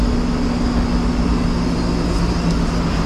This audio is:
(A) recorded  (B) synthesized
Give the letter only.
A